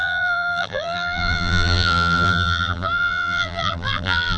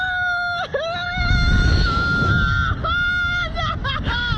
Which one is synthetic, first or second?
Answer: first